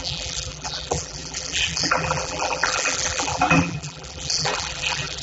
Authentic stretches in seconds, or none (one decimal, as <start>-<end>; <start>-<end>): none